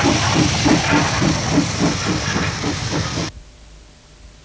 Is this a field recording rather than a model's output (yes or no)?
no